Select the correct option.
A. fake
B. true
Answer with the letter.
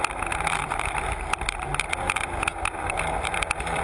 A